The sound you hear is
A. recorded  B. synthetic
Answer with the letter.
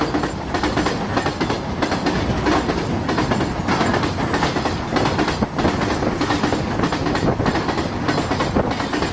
A